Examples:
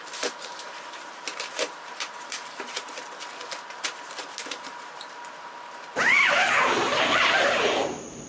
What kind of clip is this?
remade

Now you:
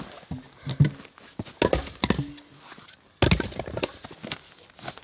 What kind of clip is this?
recorded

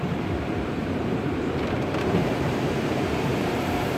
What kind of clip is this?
remade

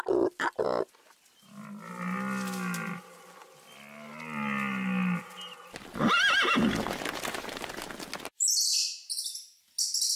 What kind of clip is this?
recorded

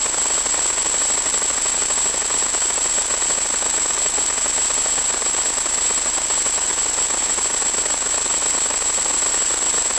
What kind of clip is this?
recorded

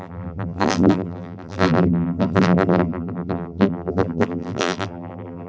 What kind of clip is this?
remade